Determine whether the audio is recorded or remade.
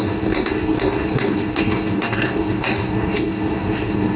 remade